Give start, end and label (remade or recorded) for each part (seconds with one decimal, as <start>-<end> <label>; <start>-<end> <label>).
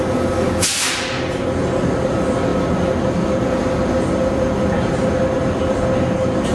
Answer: 0.0-6.5 recorded